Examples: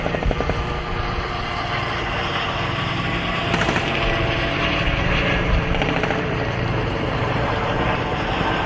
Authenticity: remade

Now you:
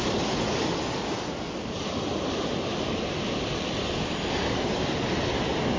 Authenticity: recorded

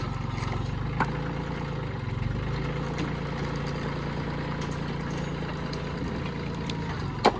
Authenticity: recorded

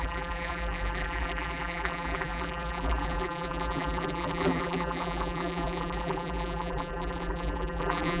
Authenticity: remade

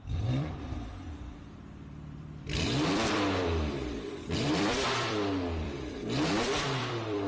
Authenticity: remade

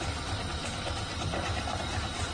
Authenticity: recorded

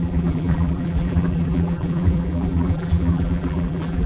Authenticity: remade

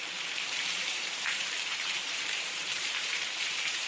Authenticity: remade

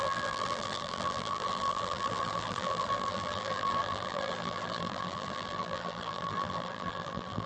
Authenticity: remade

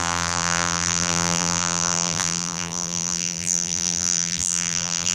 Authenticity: remade